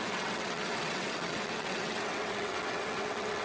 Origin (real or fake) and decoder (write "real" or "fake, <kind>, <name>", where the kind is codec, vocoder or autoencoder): fake, vocoder, WaveNeXt